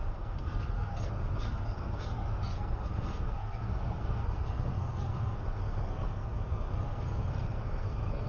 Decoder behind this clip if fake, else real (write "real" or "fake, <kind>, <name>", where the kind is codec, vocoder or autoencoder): fake, codec, SNAC